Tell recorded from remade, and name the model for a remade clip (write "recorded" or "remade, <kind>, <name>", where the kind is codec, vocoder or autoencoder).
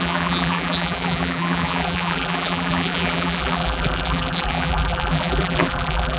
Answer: remade, vocoder, BigVGAN v2